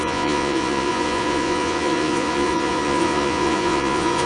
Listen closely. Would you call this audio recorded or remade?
remade